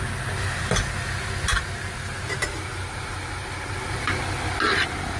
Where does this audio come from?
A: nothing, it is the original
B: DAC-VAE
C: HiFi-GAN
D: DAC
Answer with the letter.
A